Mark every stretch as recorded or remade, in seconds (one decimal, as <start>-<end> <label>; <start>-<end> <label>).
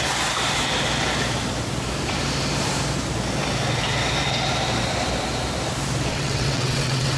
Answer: 0.0-6.1 recorded; 6.1-7.2 remade